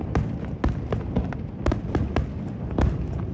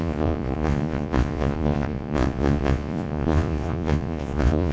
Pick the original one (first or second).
first